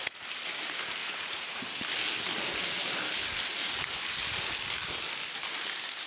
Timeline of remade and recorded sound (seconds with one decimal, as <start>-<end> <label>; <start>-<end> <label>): 0.0-1.0 recorded; 1.0-1.6 remade; 1.6-6.1 recorded